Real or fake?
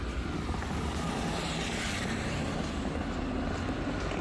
real